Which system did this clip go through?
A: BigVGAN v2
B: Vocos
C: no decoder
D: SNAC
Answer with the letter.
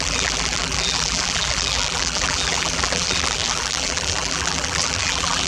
A